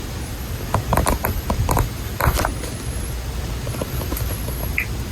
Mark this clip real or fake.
fake